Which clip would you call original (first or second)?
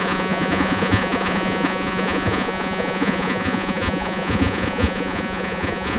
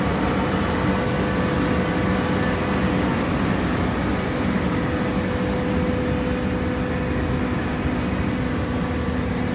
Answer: second